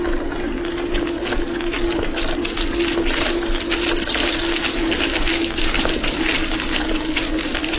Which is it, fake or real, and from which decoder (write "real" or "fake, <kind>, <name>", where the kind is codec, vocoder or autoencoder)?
real